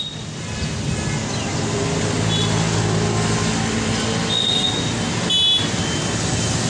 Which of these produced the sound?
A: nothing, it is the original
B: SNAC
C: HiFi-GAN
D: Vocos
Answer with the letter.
A